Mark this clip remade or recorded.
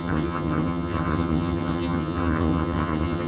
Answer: remade